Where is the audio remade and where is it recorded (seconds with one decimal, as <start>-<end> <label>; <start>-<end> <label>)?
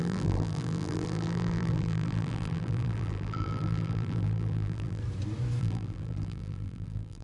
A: 0.0-5.0 remade; 5.0-5.6 recorded; 5.6-7.2 remade